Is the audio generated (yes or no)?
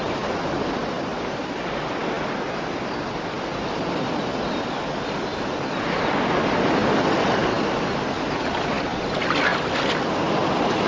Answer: no